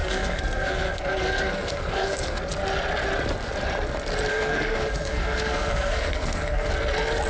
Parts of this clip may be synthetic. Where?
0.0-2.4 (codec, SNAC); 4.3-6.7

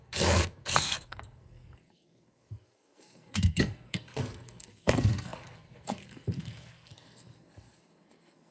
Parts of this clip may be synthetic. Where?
0.0-8.5 (codec, SNAC)

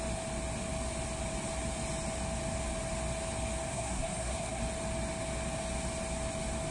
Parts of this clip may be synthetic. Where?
3.7-4.6 (codec, SNAC)

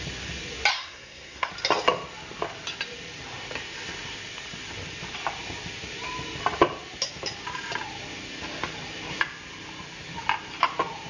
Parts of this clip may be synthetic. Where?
0.7-1.5 (codec, SNAC)

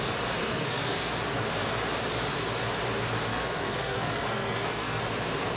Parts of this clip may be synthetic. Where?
0.4-1.1 (codec, SNAC); 3.3-5.0